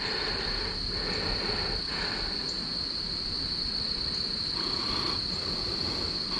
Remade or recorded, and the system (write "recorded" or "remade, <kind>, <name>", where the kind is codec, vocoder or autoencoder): recorded